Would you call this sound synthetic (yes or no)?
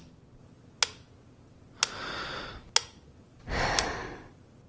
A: no